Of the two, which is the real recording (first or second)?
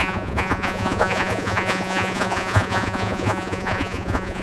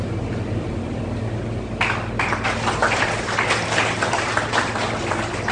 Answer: second